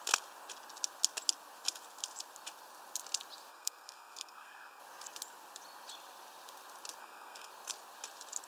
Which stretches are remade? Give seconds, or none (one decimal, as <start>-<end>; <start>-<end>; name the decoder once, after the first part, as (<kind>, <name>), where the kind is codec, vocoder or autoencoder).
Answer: 3.5-4.8 (codec, SNAC); 7.0-7.5